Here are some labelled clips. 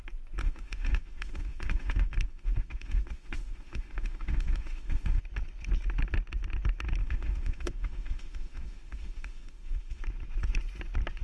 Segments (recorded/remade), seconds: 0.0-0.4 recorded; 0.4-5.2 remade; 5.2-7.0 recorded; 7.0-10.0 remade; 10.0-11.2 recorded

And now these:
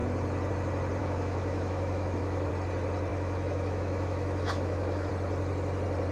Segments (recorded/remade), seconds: 0.0-1.0 recorded; 1.0-2.5 remade; 2.5-3.1 recorded; 3.1-5.1 remade; 5.1-6.1 recorded